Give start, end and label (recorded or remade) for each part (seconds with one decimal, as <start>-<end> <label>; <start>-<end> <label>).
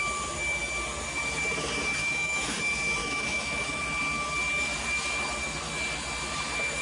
0.0-2.0 recorded; 2.0-2.6 remade; 2.6-3.0 recorded; 3.0-3.8 remade; 3.8-6.8 recorded